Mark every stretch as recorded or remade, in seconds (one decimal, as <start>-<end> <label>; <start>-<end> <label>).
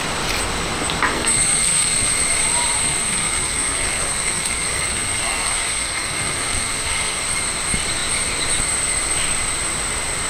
0.0-1.1 recorded; 1.1-2.1 remade; 2.1-2.8 recorded; 2.8-7.2 remade; 7.2-10.3 recorded